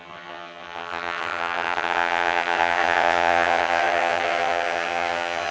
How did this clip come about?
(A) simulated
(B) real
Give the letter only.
A